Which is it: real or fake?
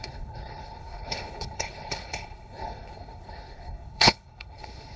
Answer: fake